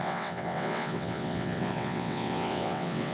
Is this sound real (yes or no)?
no